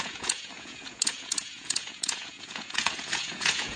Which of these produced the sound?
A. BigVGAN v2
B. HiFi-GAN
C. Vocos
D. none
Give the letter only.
C